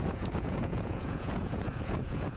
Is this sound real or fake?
fake